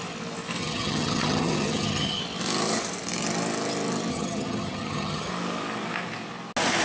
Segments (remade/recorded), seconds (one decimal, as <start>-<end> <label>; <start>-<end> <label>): 0.0-0.6 recorded; 0.6-2.2 remade; 2.2-4.1 recorded; 4.1-5.3 remade; 5.3-6.8 recorded